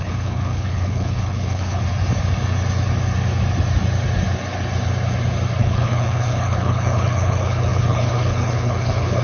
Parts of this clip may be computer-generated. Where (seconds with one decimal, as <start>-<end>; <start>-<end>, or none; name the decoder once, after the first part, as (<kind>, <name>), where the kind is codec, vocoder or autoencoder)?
0.0-1.8 (codec, HILCodec); 5.6-9.2